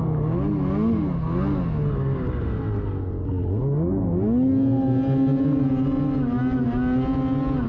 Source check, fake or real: real